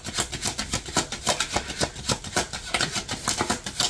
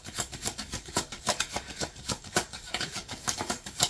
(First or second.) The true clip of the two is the first